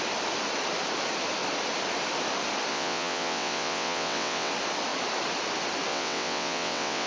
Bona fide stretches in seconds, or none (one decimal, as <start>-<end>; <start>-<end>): 0.0-2.7; 4.5-5.9